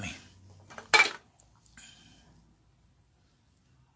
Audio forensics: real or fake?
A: real